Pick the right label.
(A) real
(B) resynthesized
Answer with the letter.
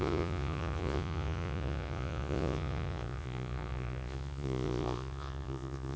B